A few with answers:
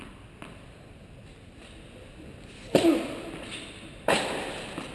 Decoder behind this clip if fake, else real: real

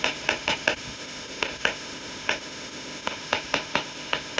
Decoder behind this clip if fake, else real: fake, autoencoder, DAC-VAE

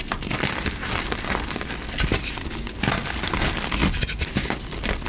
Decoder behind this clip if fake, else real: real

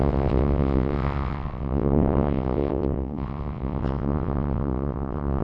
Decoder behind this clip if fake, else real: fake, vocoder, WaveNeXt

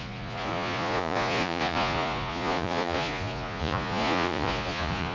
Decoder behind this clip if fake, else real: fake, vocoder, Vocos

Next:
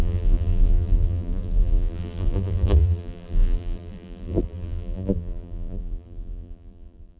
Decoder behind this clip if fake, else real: fake, vocoder, BigVGAN v2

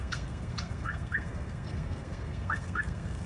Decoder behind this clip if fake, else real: fake, codec, SNAC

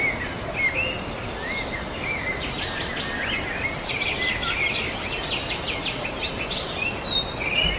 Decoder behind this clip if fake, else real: real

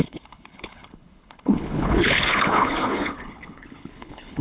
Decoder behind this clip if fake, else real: fake, codec, HILCodec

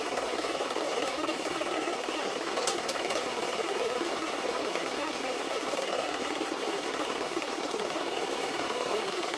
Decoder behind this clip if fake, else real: fake, codec, SNAC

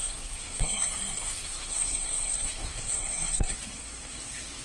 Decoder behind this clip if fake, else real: fake, codec, SNAC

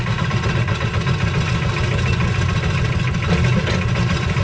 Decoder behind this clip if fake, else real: real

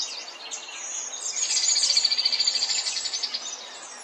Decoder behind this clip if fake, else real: real